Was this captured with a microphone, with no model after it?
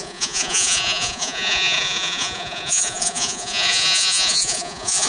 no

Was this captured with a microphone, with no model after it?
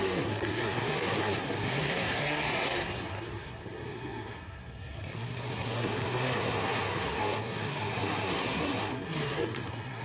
no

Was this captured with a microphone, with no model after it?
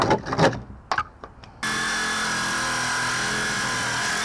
yes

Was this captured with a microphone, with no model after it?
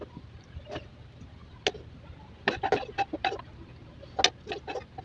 yes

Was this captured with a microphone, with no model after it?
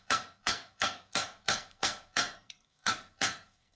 no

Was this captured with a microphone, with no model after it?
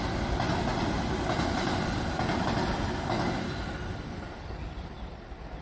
yes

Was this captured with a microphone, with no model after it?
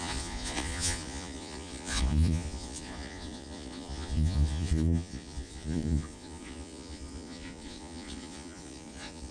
no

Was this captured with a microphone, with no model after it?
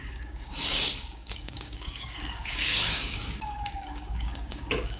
no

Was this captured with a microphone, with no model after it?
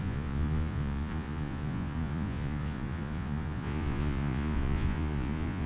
no